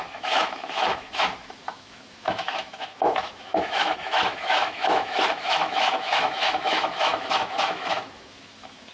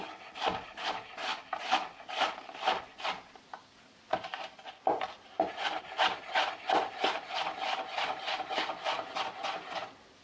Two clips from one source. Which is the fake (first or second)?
first